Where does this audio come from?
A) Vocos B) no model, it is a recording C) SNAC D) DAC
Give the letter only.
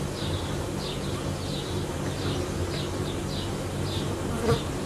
B